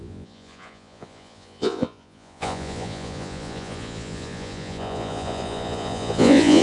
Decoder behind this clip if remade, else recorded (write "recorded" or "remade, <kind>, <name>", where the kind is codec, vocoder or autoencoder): remade, vocoder, Vocos